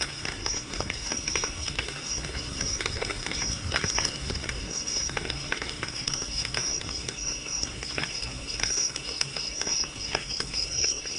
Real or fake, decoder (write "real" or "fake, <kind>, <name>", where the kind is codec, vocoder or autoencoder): fake, codec, SNAC